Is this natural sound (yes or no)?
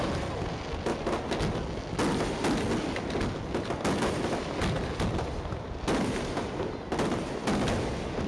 yes